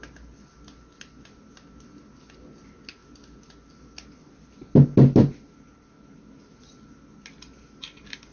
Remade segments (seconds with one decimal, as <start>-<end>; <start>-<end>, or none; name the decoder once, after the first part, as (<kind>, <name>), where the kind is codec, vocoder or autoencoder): none